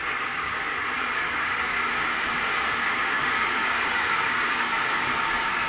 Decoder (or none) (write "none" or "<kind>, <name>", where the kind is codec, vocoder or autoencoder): codec, DAC